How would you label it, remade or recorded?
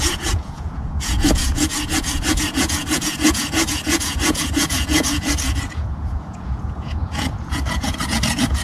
remade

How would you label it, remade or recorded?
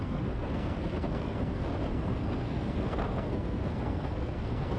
remade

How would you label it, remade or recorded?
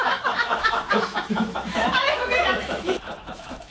remade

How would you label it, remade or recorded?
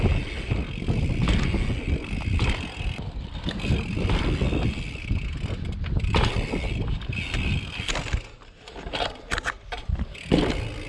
recorded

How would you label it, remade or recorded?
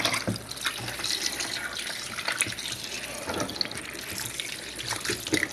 recorded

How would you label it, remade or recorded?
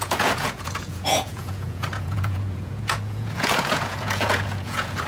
remade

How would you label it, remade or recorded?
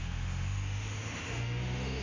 remade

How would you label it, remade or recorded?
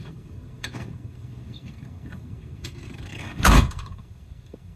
remade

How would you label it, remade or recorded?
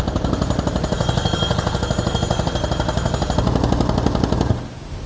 recorded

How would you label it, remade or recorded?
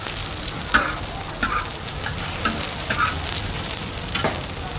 recorded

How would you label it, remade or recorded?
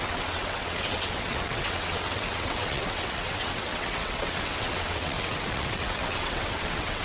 remade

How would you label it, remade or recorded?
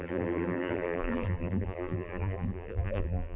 remade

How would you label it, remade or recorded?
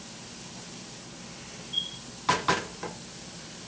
recorded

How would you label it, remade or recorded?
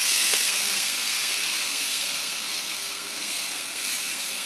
remade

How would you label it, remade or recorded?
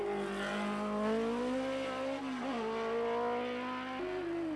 recorded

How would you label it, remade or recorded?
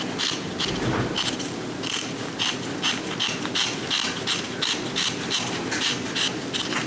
recorded